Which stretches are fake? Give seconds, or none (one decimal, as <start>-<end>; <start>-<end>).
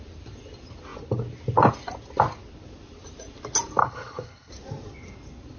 3.8-4.5